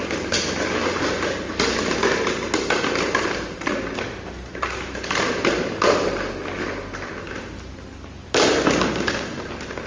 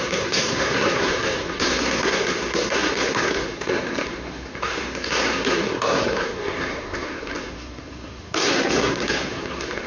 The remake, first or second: second